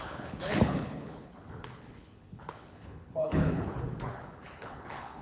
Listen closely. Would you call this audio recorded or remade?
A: remade